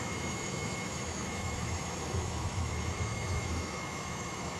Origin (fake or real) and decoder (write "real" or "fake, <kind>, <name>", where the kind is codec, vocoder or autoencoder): fake, autoencoder, DAC-VAE